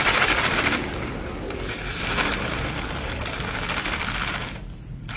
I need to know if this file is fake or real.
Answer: real